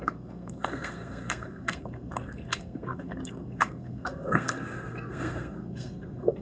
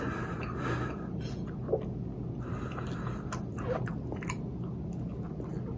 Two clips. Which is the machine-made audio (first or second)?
first